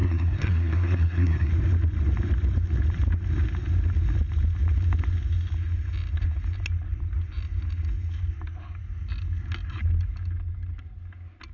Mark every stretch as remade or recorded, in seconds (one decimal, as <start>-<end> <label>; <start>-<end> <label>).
0.0-1.5 remade; 1.5-11.5 recorded